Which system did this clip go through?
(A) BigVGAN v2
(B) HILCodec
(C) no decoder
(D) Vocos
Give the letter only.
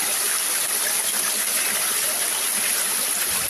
A